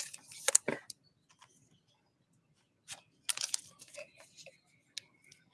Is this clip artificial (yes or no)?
no